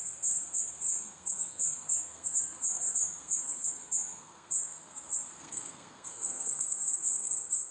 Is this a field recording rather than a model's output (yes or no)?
no